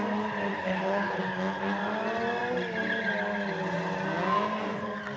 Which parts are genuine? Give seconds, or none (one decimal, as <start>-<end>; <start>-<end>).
0.0-0.5; 1.2-5.2